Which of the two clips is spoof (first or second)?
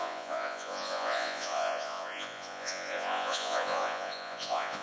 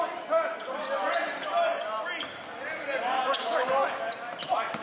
first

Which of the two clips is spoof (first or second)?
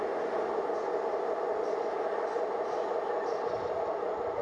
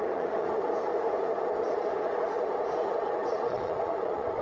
second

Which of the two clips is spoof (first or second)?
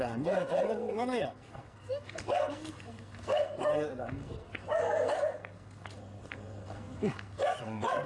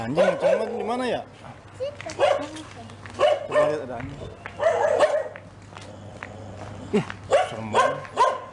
first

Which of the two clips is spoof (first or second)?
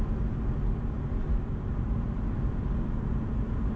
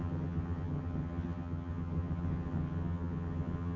second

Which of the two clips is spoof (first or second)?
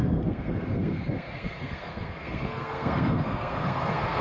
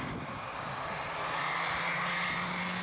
first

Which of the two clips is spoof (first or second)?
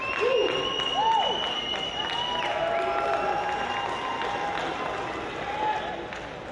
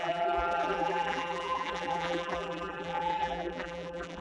second